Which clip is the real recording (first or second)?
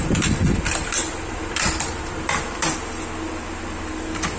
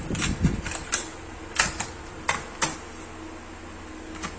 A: second